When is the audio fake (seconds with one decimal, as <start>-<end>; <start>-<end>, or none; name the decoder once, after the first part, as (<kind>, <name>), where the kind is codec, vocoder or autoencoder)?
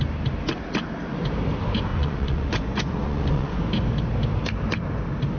1.9-3.6 (vocoder, Vocos)